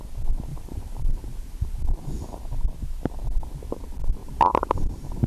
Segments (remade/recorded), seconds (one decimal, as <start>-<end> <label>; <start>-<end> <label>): 0.0-0.5 recorded; 0.5-2.4 remade; 2.4-4.2 recorded; 4.2-5.3 remade